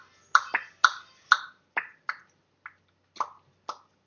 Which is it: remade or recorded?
recorded